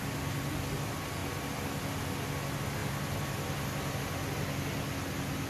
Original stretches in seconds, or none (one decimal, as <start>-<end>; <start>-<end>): 0.0-5.5